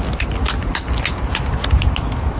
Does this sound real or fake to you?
real